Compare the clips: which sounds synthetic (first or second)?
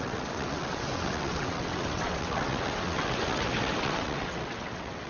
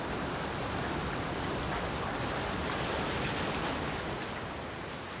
first